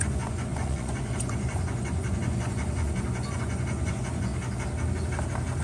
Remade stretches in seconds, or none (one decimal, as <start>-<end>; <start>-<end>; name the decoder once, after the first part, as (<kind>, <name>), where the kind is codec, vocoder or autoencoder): 0.0-4.3 (vocoder, Vocos)